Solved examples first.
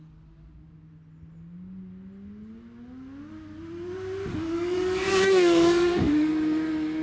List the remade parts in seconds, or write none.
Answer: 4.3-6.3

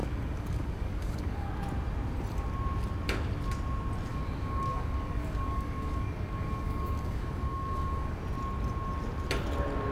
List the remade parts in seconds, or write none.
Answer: 0.0-1.5; 4.1-8.2

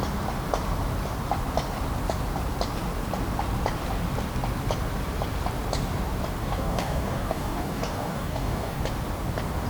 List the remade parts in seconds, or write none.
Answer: 6.4-8.8

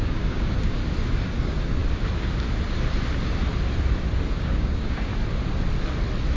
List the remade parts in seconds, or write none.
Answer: 0.0-0.8; 1.4-1.8; 4.4-5.1

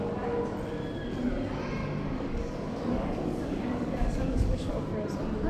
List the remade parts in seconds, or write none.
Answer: 1.8-4.7

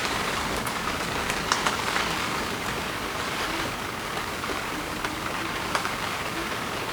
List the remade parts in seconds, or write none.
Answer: 0.0-6.9

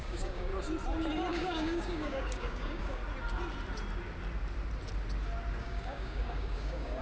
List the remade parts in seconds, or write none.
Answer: 0.0-0.5; 1.3-3.0; 5.6-7.0

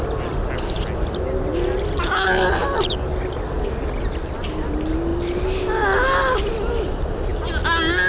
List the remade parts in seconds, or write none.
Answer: none